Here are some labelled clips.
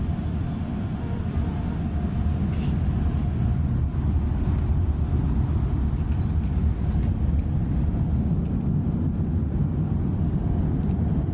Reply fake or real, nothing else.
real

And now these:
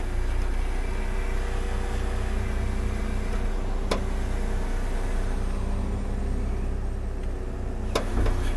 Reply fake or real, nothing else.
real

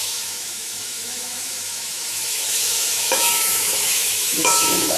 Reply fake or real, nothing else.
fake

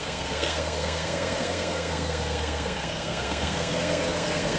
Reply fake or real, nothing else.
fake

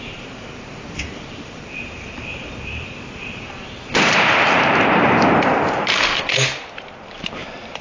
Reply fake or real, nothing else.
fake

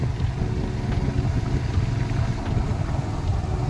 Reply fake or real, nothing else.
real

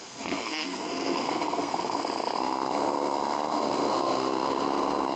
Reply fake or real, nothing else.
fake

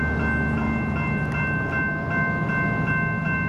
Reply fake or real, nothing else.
real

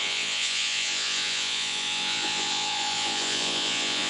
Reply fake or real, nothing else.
fake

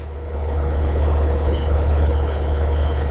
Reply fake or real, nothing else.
fake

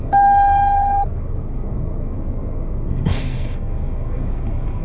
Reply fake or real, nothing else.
fake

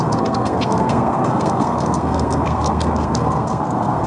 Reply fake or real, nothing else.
fake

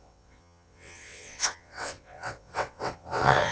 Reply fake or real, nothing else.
fake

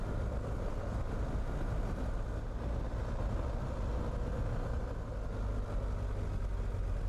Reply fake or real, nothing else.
real